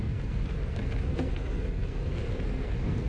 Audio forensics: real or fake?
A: fake